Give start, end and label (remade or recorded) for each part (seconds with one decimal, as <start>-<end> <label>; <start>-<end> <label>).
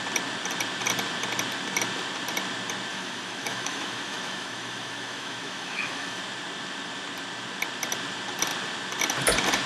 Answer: 0.0-2.9 recorded; 2.9-6.2 remade; 6.2-9.7 recorded